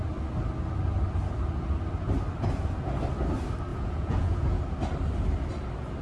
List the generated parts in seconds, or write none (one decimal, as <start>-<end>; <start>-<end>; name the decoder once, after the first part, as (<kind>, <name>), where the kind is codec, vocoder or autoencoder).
3.7-4.6 (vocoder, Vocos)